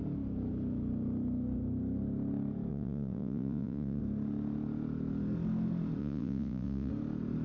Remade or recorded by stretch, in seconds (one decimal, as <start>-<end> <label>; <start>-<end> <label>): 0.0-2.7 recorded; 2.7-4.0 remade; 4.0-6.0 recorded; 6.0-6.9 remade; 6.9-7.4 recorded